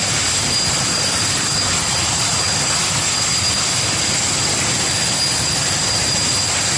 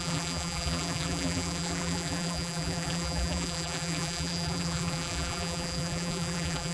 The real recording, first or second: first